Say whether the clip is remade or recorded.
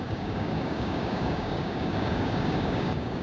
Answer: remade